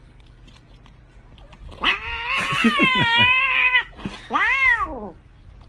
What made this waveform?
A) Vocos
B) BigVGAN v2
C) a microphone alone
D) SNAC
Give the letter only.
C